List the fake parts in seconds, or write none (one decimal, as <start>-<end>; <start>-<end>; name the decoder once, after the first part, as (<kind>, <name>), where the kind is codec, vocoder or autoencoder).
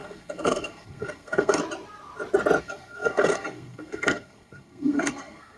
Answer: 0.0-1.6 (codec, SNAC); 2.6-5.6